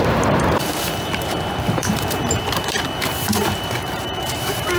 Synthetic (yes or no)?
yes